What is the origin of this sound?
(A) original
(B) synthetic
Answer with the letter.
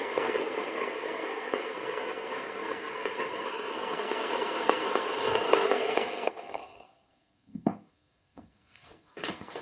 B